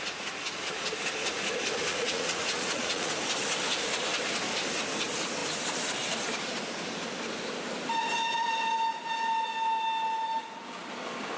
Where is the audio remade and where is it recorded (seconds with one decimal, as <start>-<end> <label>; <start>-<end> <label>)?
0.0-1.9 recorded; 1.9-3.1 remade; 3.1-11.4 recorded